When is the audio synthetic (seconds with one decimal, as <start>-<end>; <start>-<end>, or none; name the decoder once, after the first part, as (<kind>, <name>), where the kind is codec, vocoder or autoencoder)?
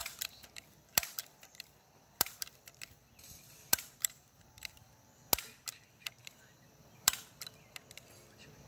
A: 0.0-0.5 (vocoder, BigVGAN v2); 0.9-5.2; 6.2-7.6